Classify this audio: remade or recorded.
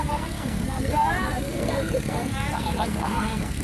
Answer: remade